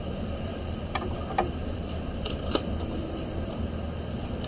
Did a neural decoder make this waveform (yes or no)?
yes